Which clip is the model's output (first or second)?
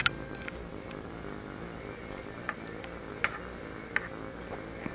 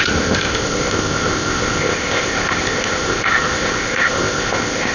second